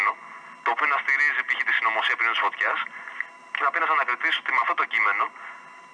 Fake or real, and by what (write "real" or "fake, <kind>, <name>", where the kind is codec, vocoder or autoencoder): real